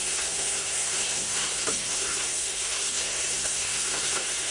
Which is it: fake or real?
fake